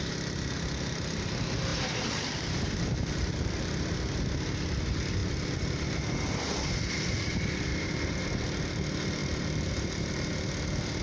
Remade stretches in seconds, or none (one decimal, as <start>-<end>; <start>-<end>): 1.7-4.0; 7.7-8.2; 9.2-10.3